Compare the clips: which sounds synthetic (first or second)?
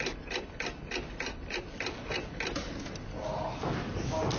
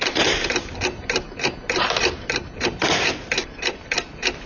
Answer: second